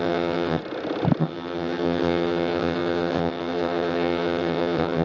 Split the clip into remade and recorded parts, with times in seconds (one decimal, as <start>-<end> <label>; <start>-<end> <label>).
0.0-0.6 remade; 0.6-1.2 recorded; 1.2-5.0 remade